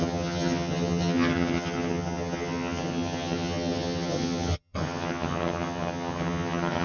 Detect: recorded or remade remade